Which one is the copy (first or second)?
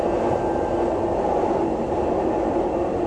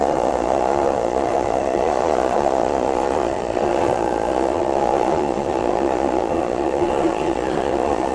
second